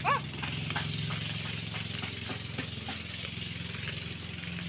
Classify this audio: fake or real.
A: real